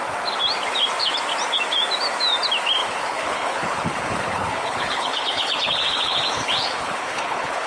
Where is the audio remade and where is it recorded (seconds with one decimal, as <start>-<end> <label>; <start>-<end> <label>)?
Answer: 0.0-2.8 recorded; 2.8-7.7 remade